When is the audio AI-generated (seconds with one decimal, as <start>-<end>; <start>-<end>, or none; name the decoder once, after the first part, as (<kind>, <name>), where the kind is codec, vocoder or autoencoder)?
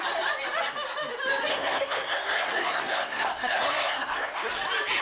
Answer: 1.5-4.5 (codec, SNAC)